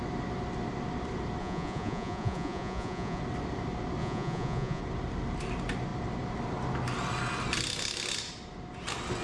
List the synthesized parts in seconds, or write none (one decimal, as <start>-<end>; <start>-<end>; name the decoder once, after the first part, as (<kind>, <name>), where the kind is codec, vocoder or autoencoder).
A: 1.4-3.2 (vocoder, Vocos); 4.0-4.8